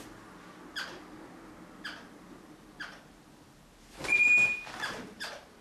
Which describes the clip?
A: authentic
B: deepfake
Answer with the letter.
A